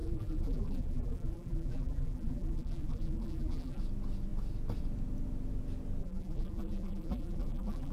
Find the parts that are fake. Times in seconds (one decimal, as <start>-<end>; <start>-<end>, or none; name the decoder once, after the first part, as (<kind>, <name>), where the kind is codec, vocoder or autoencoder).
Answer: 0.0-3.8 (vocoder, BigVGAN v2); 6.0-7.9